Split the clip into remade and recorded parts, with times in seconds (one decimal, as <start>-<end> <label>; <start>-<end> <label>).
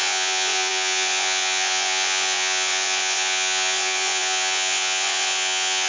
0.0-5.9 remade